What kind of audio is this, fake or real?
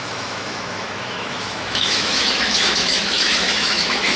fake